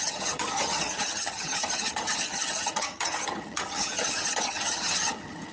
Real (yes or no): no